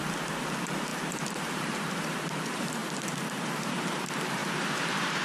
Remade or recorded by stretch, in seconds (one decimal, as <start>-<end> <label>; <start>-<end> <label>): 0.0-5.2 remade